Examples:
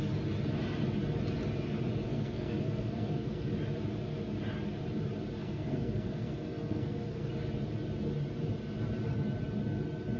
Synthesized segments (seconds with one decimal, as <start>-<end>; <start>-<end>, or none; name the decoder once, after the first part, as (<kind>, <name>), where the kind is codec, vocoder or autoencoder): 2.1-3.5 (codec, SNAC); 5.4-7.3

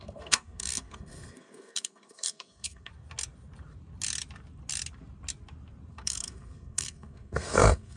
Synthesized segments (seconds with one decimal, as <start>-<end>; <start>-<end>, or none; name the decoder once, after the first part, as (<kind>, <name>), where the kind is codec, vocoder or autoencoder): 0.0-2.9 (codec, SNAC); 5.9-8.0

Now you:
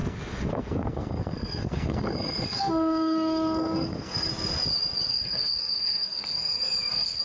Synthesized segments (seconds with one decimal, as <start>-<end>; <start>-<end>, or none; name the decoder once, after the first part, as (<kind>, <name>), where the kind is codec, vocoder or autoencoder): 0.0-4.3 (codec, SNAC); 5.1-7.2

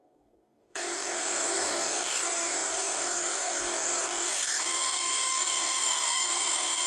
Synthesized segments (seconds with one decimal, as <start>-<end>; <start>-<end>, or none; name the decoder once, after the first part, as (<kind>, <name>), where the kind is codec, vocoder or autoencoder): 0.0-6.9 (codec, DAC)

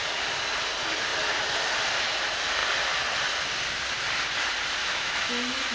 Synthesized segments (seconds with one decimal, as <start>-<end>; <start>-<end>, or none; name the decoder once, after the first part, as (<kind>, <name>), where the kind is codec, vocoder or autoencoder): 4.8-5.3 (autoencoder, DAC-VAE)